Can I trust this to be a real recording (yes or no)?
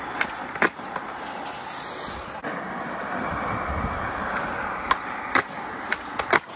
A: yes